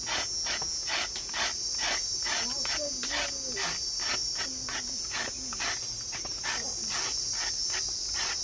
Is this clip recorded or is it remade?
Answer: recorded